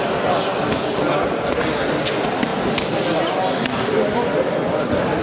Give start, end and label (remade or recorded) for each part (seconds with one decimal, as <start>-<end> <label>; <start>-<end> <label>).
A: 0.0-5.2 recorded